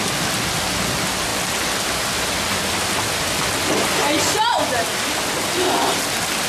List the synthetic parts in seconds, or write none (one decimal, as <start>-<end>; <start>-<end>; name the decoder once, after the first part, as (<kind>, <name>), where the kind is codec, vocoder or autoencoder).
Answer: none

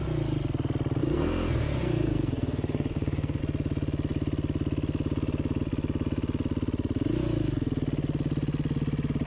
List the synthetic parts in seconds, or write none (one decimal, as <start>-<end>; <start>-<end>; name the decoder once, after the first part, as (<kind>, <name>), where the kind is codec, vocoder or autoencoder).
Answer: 1.0-3.4 (codec, SNAC)